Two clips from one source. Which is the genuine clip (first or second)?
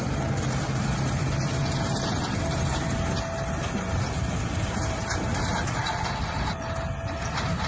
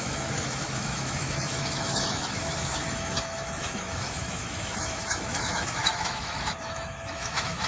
first